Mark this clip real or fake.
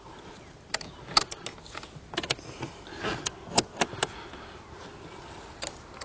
real